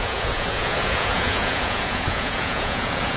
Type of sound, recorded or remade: remade